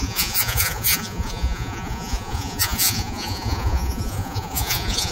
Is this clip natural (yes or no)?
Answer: no